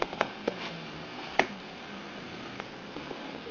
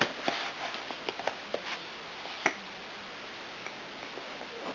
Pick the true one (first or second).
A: second